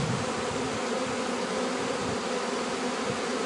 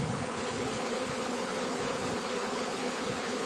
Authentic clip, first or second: first